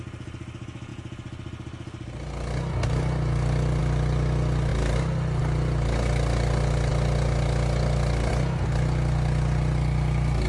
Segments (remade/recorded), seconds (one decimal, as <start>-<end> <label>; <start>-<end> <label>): 0.0-4.7 recorded; 4.7-5.4 remade; 5.4-10.5 recorded